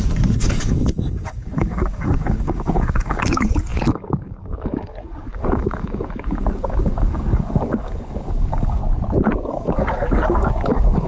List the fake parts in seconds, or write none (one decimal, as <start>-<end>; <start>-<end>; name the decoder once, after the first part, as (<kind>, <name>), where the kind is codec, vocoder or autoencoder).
0.0-8.8 (codec, DAC); 9.5-11.1